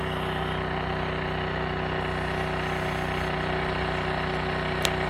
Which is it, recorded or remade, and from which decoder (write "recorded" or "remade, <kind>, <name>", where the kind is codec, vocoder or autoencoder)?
recorded